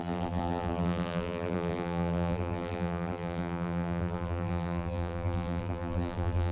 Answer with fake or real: fake